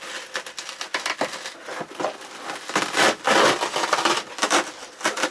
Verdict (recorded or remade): recorded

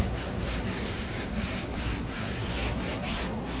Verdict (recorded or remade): remade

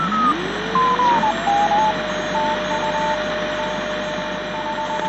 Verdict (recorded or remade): recorded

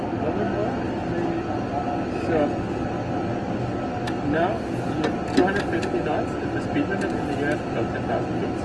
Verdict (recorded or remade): recorded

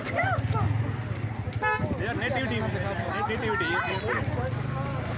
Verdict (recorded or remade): recorded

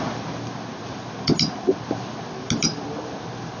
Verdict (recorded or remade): recorded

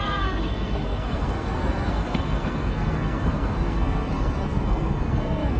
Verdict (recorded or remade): remade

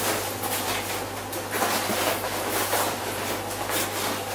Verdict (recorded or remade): recorded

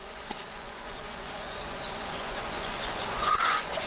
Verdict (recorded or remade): remade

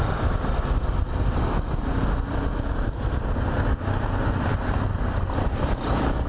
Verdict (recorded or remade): recorded